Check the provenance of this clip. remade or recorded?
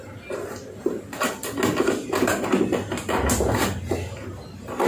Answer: recorded